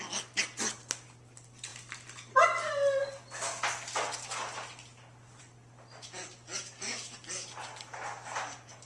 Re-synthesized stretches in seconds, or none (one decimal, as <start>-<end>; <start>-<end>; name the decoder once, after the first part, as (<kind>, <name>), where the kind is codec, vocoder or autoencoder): none

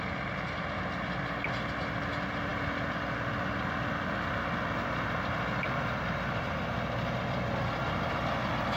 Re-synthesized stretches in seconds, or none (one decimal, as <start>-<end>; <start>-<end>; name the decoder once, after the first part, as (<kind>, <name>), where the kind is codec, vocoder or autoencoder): none

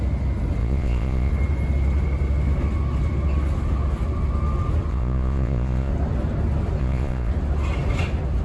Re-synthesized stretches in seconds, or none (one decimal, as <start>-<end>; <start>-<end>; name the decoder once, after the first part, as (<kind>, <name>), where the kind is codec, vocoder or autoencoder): 0.6-1.3 (vocoder, Vocos); 4.9-5.9; 6.8-7.3

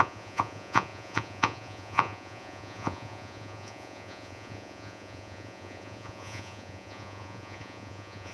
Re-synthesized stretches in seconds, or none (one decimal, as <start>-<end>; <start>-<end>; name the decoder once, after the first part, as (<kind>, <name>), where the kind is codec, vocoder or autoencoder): 0.0-8.3 (vocoder, Vocos)

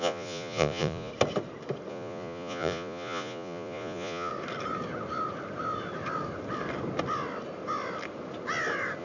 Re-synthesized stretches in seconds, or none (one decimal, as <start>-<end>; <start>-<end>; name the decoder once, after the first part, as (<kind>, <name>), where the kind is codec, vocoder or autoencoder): 0.0-1.1 (vocoder, Vocos); 1.9-4.3

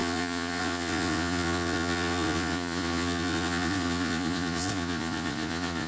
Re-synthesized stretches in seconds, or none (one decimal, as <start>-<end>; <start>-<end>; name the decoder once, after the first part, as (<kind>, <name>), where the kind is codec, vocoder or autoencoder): 0.0-5.9 (vocoder, Vocos)

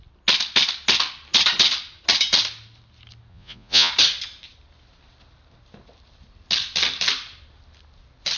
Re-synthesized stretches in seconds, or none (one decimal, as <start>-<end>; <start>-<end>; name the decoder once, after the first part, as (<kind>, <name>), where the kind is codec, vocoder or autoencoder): 3.3-3.9 (vocoder, Vocos)